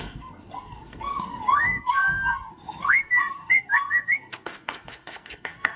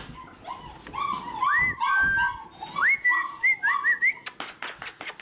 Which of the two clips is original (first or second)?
second